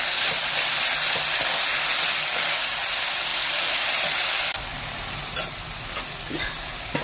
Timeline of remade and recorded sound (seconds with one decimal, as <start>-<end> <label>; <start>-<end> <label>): 0.0-3.3 recorded; 3.3-4.0 remade; 4.0-4.7 recorded; 4.7-5.5 remade; 5.5-7.0 recorded